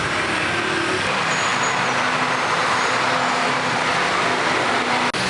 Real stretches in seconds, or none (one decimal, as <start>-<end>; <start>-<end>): 0.0-5.3

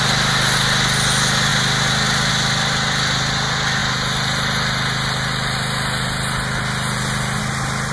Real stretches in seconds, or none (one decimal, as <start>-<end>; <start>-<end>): 0.0-7.9